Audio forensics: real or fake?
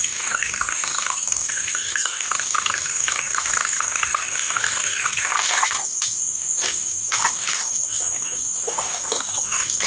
fake